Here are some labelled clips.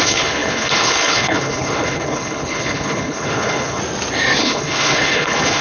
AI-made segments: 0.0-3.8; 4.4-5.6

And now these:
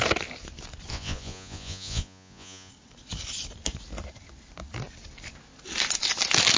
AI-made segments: 0.9-2.7

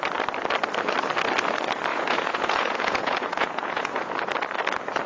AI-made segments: 1.9-4.1

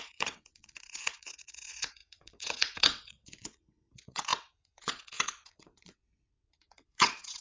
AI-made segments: 0.0-7.4

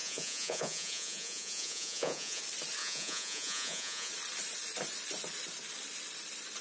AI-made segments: 0.0-2.4; 2.8-4.1

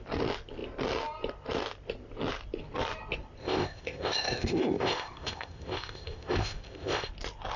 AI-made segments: 3.4-7.1